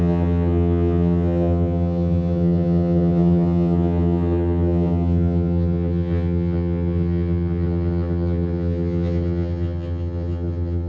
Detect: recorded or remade remade